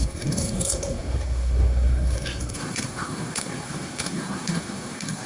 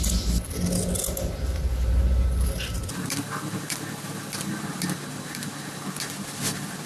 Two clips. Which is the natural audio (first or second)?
second